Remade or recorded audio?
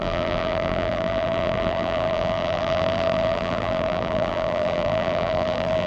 remade